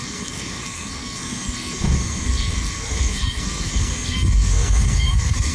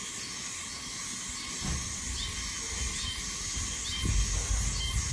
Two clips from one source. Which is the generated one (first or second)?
first